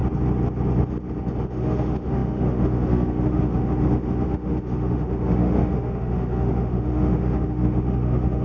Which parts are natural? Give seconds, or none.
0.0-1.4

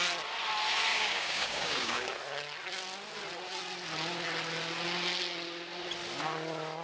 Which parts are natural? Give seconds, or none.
0.0-0.9; 2.1-6.8

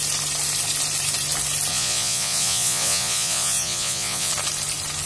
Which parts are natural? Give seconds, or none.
0.0-1.7; 4.3-5.1

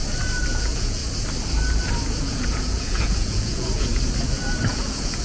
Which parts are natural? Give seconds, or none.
0.0-0.5; 1.0-2.2; 3.9-4.7

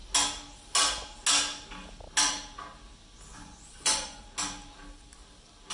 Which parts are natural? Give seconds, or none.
0.0-3.3; 4.2-5.7

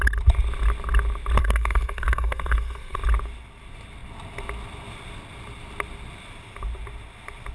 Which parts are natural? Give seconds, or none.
0.0-1.4; 3.0-7.5

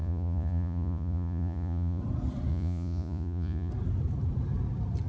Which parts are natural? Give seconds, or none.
2.0-2.5; 3.7-5.1